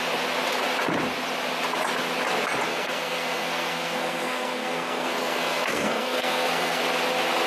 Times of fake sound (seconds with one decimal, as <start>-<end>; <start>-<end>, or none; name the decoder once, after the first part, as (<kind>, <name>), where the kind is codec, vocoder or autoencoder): 2.7-6.8 (codec, SNAC)